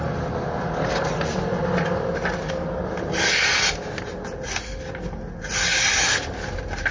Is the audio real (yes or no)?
yes